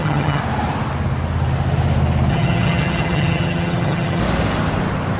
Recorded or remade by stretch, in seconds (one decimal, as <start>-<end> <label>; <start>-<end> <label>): 0.0-0.4 remade; 0.4-2.3 recorded; 2.3-4.2 remade; 4.2-5.2 recorded